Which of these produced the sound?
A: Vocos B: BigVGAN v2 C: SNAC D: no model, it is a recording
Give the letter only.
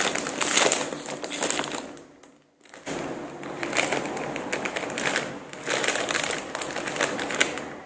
D